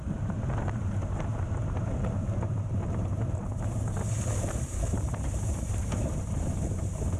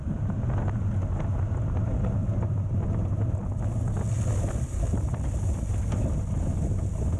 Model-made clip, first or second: first